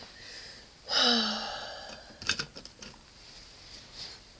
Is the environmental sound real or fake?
real